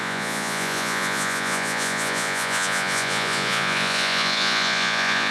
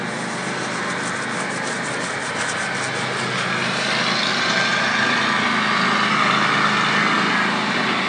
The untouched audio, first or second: second